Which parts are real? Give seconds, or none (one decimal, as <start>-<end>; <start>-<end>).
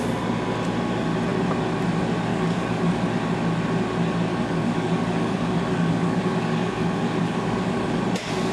0.0-2.3; 3.1-4.3; 8.0-8.5